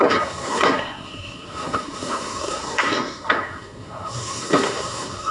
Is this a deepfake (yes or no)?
yes